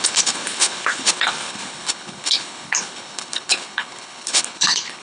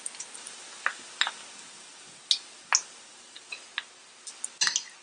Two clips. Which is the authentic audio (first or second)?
second